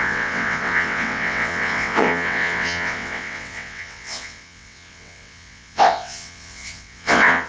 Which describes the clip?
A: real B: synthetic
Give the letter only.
B